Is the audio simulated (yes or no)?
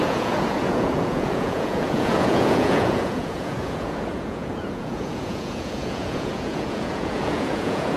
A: yes